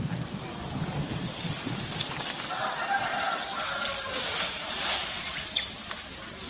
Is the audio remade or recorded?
recorded